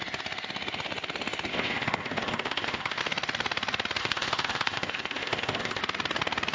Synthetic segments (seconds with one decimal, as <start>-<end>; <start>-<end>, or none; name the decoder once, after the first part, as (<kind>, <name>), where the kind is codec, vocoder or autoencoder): 1.5-3.0 (codec, ZipCodec); 4.0-5.8